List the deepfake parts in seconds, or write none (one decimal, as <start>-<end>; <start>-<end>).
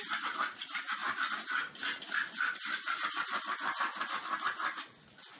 none